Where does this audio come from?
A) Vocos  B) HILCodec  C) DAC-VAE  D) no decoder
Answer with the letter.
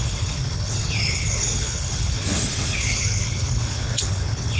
B